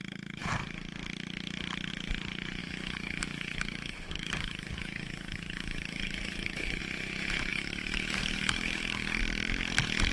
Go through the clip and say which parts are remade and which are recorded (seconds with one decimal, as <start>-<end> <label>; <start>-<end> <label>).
0.0-2.6 recorded; 2.6-6.8 remade; 6.8-7.5 recorded; 7.5-9.2 remade; 9.2-10.1 recorded